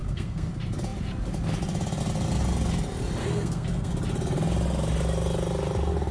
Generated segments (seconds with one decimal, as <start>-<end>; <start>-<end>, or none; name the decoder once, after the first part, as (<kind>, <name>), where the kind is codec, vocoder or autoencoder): 0.0-0.5 (codec, SNAC); 3.2-3.9